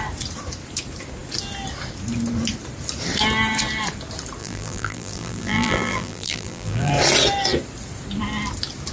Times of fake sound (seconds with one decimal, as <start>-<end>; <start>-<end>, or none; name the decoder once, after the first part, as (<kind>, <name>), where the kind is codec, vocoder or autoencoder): 4.4-6.9 (vocoder, BigVGAN v2)